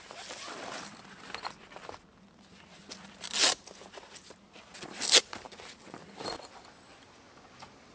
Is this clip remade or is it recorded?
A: recorded